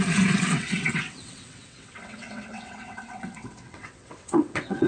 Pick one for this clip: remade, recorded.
remade